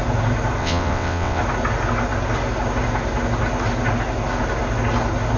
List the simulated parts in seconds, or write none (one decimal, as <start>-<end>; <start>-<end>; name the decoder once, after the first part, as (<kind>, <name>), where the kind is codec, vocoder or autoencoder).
0.6-1.4 (vocoder, WaveNeXt)